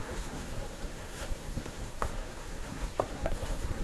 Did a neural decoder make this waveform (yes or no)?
yes